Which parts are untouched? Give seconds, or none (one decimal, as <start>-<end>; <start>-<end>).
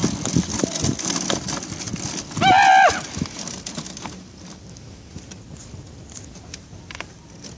0.0-7.6